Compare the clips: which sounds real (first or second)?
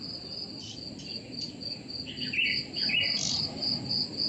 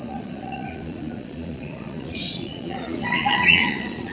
first